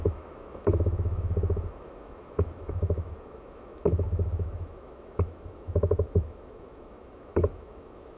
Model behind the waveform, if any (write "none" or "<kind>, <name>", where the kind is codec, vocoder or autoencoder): autoencoder, DAC-VAE